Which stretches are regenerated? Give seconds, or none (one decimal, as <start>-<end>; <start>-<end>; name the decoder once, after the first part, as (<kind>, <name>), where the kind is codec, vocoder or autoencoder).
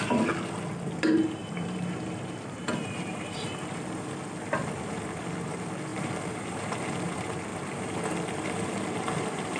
1.4-4.1 (vocoder, BigVGAN v2); 5.9-6.6